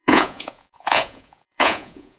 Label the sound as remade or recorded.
remade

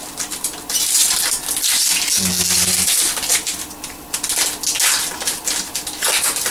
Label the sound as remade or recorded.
recorded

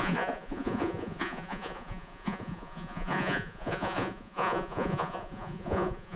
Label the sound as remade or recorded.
remade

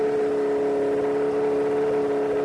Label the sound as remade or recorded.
recorded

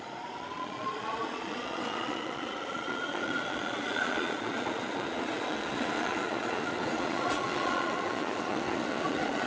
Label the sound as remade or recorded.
remade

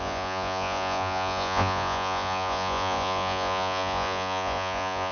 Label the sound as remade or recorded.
remade